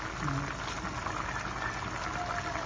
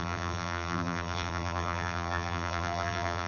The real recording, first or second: first